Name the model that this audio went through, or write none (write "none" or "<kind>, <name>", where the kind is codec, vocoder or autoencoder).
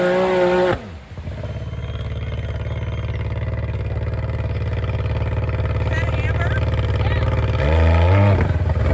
none